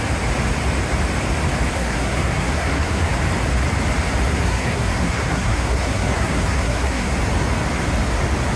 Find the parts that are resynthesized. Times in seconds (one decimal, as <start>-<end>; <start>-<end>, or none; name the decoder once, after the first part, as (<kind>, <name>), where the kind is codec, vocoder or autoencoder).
1.7-3.1 (codec, SNAC); 4.3-7.2